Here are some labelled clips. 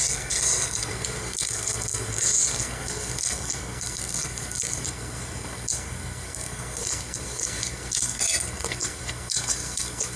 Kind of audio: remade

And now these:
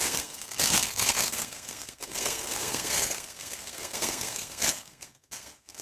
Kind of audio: remade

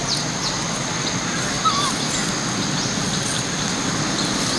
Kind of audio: recorded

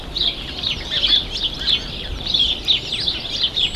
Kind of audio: recorded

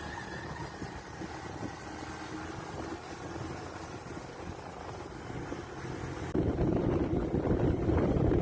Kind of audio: recorded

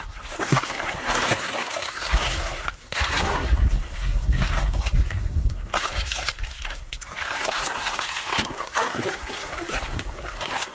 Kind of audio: remade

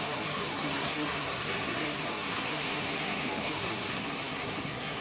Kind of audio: remade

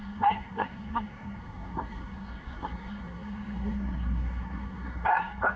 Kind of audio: remade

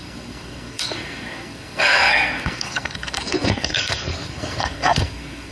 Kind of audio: remade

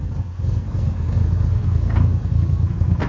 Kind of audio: remade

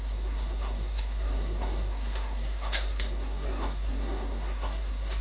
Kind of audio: remade